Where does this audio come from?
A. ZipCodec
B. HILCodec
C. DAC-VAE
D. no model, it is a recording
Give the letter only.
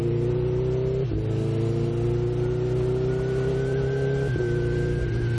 D